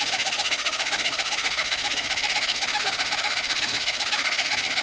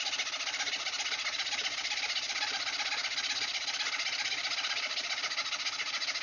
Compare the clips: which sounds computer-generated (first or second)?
first